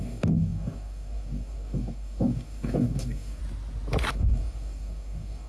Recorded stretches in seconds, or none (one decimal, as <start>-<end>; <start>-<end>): 3.4-4.1